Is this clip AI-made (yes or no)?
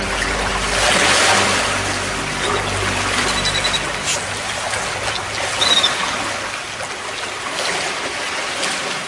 no